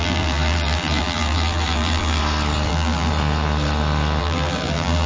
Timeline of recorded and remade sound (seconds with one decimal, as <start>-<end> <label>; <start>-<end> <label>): 0.0-2.2 remade; 2.2-2.7 recorded; 2.7-3.1 remade; 3.1-4.2 recorded; 4.2-5.1 remade

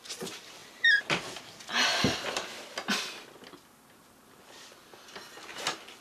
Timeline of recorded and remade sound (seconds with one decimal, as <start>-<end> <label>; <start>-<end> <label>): 0.0-1.9 remade; 1.9-5.5 recorded; 5.5-6.0 remade

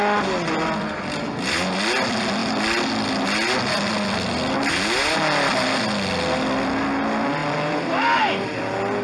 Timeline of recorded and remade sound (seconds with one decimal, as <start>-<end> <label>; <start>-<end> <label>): 0.0-9.0 recorded

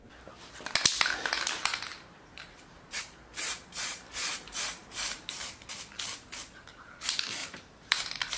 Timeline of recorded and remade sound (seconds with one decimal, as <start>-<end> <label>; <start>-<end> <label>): 0.0-1.9 recorded; 1.9-5.6 remade; 5.6-7.4 recorded; 7.4-8.0 remade; 8.0-8.4 recorded

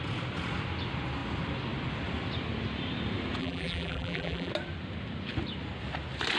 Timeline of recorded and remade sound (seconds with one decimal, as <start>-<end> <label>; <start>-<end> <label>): 0.0-3.4 recorded; 3.4-4.5 remade; 4.5-6.4 recorded

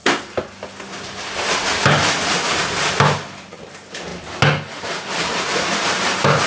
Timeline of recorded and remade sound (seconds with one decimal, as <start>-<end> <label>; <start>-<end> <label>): 0.0-3.5 recorded; 3.5-4.1 remade; 4.1-4.8 recorded; 4.8-6.5 remade

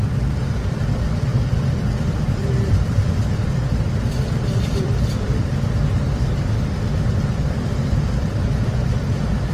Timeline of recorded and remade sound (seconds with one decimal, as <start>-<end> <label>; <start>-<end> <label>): 0.0-1.3 remade; 1.3-2.0 recorded; 2.0-3.6 remade; 3.6-4.6 recorded; 4.6-9.5 remade